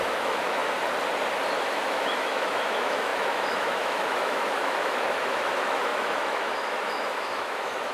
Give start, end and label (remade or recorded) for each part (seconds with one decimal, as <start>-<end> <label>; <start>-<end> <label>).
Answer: 0.0-0.6 remade; 0.6-1.6 recorded; 1.6-7.9 remade